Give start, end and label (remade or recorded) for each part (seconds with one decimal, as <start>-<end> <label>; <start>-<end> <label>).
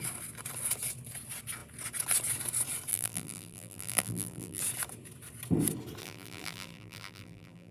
0.0-2.9 recorded; 2.9-4.6 remade; 4.6-6.0 recorded; 6.0-7.7 remade